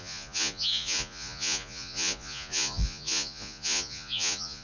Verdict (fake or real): fake